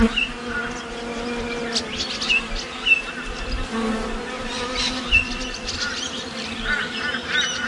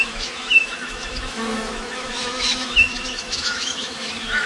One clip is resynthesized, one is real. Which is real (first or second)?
first